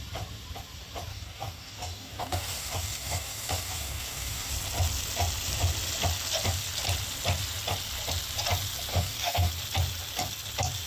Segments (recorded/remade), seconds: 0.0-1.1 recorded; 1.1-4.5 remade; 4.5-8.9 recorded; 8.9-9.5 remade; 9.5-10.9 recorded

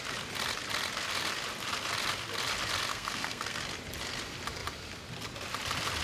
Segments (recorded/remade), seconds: 0.0-2.9 recorded; 2.9-3.6 remade; 3.6-6.0 recorded